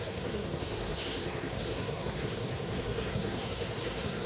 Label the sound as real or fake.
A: fake